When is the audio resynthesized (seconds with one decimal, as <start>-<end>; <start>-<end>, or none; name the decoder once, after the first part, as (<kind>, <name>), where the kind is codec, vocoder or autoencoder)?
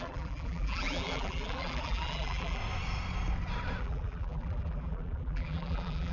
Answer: 0.0-2.6 (vocoder, BigVGAN v2); 3.8-6.1